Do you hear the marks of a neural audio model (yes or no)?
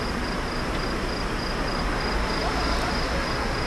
no